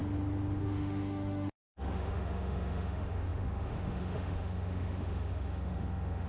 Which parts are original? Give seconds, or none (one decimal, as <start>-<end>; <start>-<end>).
0.0-0.6